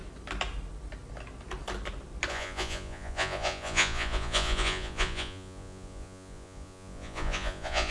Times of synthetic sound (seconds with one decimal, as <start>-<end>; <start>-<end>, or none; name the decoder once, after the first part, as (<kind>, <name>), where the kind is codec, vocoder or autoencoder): 2.3-7.9 (vocoder, Vocos)